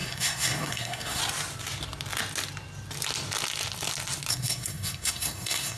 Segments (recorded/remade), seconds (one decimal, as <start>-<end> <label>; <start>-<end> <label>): 0.0-1.2 remade; 1.2-4.3 recorded; 4.3-5.8 remade